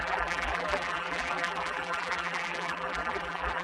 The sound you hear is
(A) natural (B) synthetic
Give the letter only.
B